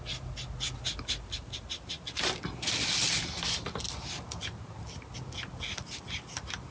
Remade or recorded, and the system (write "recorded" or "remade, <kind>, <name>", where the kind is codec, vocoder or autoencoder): recorded